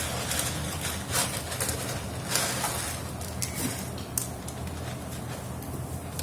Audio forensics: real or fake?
real